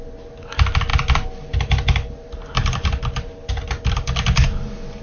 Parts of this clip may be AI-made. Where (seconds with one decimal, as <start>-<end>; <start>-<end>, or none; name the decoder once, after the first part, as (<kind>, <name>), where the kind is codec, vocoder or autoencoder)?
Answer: none